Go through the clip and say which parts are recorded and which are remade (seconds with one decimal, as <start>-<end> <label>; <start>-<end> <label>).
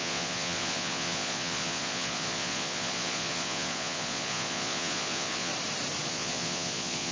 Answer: 0.0-5.5 remade; 5.5-6.1 recorded; 6.1-7.1 remade